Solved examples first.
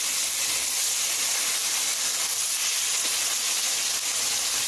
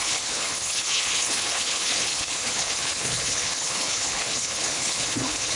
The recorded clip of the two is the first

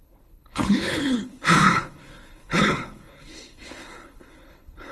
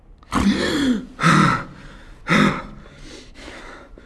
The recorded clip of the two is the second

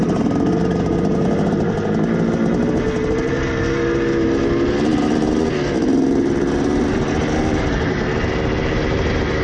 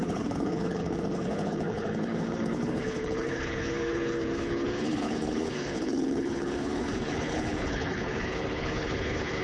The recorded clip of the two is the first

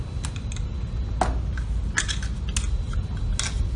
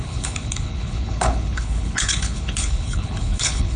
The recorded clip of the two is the first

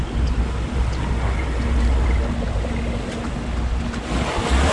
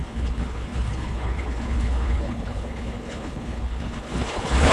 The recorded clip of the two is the first